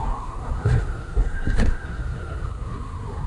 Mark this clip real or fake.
fake